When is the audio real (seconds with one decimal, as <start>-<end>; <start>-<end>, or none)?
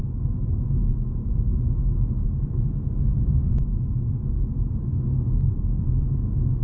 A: 0.6-3.1; 5.8-6.6